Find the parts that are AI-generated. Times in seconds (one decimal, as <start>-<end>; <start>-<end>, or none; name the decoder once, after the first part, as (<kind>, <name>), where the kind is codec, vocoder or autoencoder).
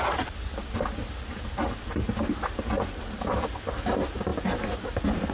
none